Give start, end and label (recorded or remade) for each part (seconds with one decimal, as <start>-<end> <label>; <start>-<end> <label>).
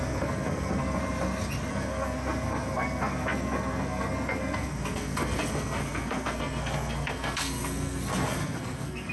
0.0-1.0 remade; 1.0-1.7 recorded; 1.7-9.1 remade